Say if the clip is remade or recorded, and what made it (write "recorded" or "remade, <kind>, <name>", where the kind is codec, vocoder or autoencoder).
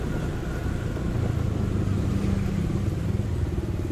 recorded